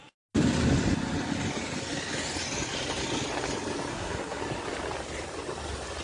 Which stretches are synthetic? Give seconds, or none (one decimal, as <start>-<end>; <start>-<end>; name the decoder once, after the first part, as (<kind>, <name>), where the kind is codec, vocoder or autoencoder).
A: 3.9-4.4 (codec, SNAC)